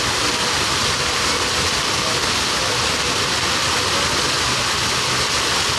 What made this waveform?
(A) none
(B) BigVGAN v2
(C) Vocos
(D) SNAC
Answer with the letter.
A